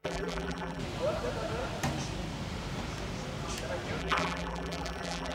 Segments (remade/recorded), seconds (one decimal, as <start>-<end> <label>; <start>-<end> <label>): 0.0-0.8 remade; 0.8-4.0 recorded; 4.0-5.3 remade